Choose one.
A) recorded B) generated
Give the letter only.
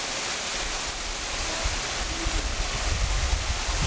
A